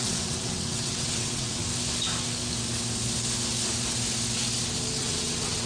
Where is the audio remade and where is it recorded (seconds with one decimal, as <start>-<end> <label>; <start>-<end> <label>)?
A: 0.0-1.6 remade; 1.6-5.0 recorded; 5.0-5.7 remade